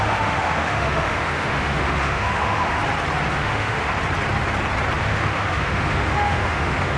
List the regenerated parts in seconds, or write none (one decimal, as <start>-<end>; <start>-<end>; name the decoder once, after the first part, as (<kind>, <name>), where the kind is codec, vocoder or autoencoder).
0.0-2.8 (autoencoder, DAC-VAE); 3.3-3.9; 5.0-7.0